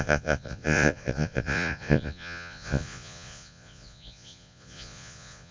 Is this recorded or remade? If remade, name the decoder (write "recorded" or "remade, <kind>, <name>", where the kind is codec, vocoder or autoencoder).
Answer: remade, vocoder, Vocos